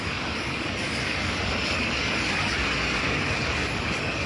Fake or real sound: fake